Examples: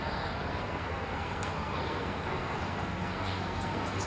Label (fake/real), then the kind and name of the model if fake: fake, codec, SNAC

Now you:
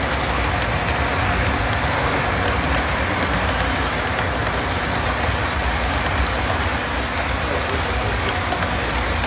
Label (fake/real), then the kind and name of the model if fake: real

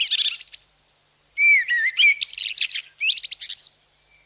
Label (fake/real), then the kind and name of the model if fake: real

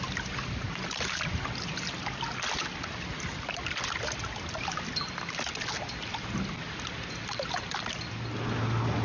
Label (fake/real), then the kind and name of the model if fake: real